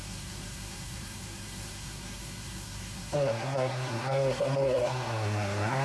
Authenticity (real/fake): fake